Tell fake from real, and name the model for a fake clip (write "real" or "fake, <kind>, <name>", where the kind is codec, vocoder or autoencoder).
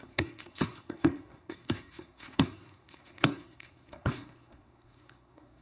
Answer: fake, codec, SNAC